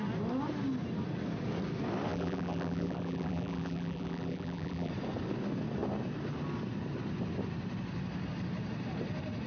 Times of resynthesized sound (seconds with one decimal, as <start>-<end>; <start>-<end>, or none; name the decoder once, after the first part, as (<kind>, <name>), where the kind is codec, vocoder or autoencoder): 2.1-4.9 (vocoder, BigVGAN v2)